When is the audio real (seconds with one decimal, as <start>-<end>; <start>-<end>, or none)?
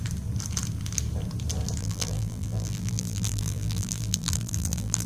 0.0-1.8